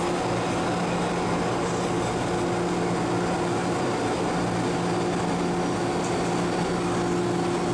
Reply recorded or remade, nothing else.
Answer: recorded